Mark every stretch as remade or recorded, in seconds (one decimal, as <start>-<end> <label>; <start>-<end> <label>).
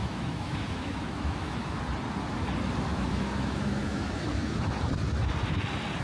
0.0-1.8 remade; 1.8-2.9 recorded; 2.9-4.6 remade; 4.6-6.0 recorded